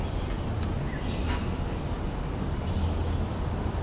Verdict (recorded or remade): recorded